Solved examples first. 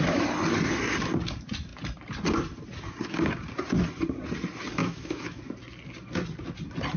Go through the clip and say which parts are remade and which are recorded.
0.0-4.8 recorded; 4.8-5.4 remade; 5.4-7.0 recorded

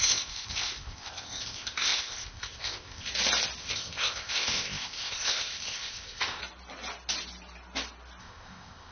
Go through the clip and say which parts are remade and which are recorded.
0.0-3.1 remade; 3.1-3.6 recorded; 3.6-6.4 remade; 6.4-8.2 recorded; 8.2-8.9 remade

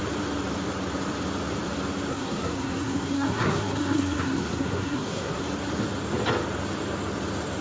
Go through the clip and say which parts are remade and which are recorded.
0.0-2.1 recorded; 2.1-5.4 remade; 5.4-7.6 recorded

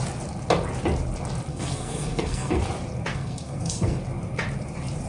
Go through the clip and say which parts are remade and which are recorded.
0.0-1.5 recorded; 1.5-2.6 remade; 2.6-3.1 recorded; 3.1-4.0 remade; 4.0-5.1 recorded